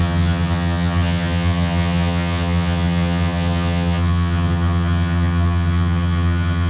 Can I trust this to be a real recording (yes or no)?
no